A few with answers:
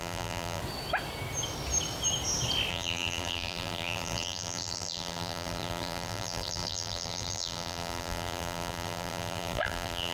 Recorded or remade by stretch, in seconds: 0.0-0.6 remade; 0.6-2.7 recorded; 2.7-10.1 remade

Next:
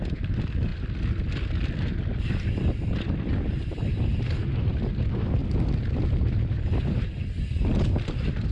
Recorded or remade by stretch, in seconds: 0.0-8.5 recorded

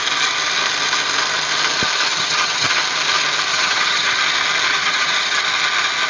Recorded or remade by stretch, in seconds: 0.0-2.1 recorded; 2.1-2.8 remade; 2.8-3.5 recorded; 3.5-4.2 remade; 4.2-4.7 recorded; 4.7-5.4 remade; 5.4-6.1 recorded

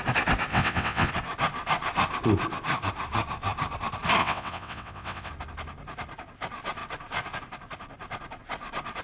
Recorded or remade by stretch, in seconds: 0.0-0.5 recorded; 0.5-1.1 remade; 1.1-4.2 recorded; 4.2-5.3 remade; 5.3-9.0 recorded

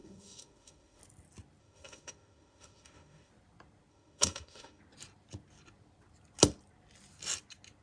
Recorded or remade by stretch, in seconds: 0.0-1.0 remade; 1.0-1.6 recorded; 1.6-3.3 remade; 3.3-3.9 recorded; 3.9-4.8 remade; 4.8-7.8 recorded